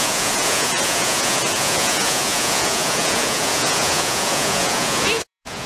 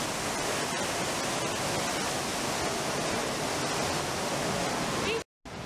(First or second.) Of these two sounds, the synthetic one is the first